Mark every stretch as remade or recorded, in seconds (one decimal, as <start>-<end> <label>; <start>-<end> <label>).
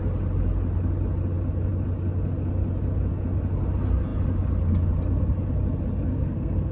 0.0-6.1 recorded; 6.1-6.7 remade